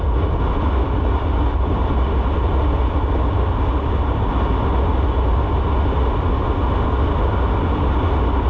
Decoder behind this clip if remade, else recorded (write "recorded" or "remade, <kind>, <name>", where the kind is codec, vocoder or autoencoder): recorded